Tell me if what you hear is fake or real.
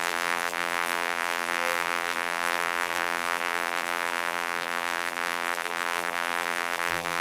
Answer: fake